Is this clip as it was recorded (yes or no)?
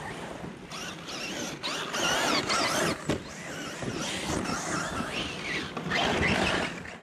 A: yes